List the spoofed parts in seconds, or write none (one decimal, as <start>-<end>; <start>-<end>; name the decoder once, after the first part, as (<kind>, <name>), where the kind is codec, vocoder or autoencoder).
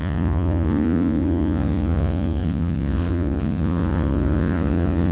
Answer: 0.0-5.1 (vocoder, Vocos)